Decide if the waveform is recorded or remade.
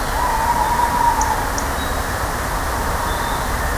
recorded